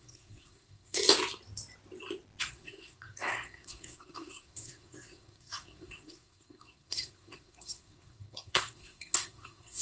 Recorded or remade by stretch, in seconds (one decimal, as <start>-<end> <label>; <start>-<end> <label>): 0.0-1.0 remade; 1.0-2.4 recorded; 2.4-9.8 remade